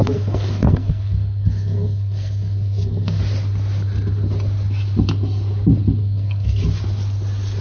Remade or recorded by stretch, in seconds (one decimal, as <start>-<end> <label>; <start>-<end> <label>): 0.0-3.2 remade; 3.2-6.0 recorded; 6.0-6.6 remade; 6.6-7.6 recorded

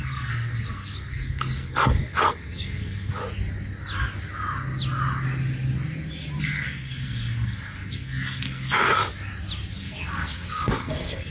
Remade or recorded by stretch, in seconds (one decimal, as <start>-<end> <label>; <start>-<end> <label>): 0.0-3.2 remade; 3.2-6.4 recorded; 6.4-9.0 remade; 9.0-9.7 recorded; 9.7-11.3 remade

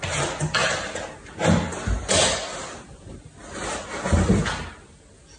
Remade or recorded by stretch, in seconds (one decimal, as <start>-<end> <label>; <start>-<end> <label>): 0.0-5.4 recorded

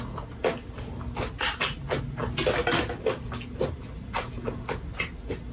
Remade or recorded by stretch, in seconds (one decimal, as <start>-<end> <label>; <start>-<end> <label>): 0.0-5.5 recorded